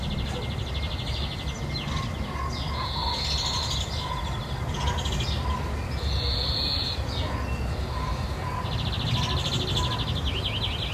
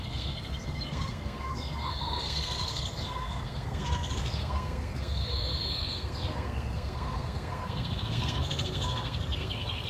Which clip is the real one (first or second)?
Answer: first